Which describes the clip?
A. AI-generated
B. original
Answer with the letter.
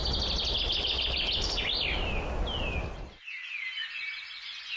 B